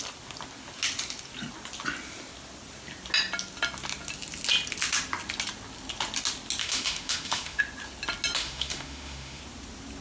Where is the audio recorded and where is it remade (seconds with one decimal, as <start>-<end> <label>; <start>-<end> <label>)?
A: 0.0-6.6 recorded; 6.6-7.6 remade; 7.6-8.4 recorded; 8.4-9.4 remade; 9.4-10.0 recorded